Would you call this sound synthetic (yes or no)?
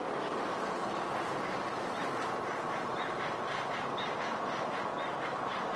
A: no